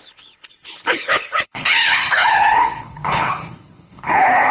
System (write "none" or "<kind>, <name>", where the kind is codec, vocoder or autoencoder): codec, HILCodec